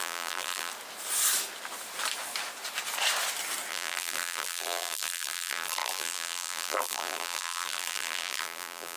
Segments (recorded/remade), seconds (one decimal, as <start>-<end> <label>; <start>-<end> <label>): 0.0-0.7 remade; 0.7-3.7 recorded; 3.7-9.0 remade